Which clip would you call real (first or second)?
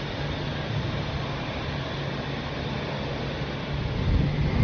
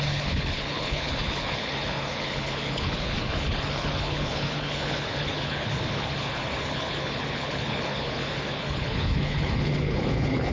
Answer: first